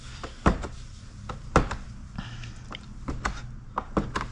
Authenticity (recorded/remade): recorded